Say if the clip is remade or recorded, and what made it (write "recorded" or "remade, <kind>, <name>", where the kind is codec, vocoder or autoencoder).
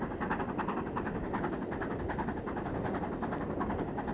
recorded